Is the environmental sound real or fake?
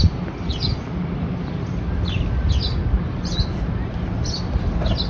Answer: real